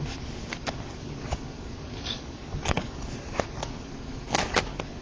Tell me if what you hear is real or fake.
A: fake